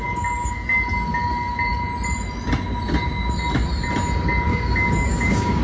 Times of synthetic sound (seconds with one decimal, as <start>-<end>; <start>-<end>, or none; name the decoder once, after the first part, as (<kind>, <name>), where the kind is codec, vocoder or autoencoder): 4.5-5.6 (codec, DAC)